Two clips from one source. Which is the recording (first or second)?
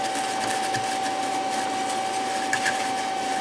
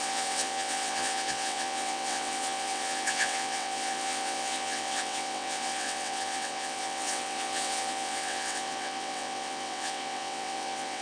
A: first